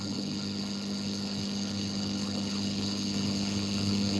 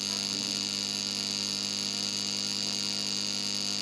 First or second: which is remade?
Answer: first